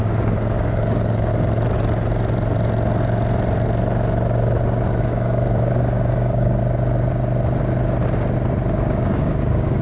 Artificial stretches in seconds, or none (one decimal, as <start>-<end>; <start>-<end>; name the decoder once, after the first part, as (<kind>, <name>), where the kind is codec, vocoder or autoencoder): 0.0-1.3 (codec, DAC); 5.0-6.6; 8.7-9.8